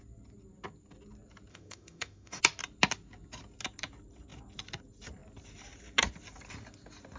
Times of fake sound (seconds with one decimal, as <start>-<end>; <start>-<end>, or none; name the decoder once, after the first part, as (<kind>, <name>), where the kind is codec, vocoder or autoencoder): 1.5-2.4 (autoencoder, DAC-VAE)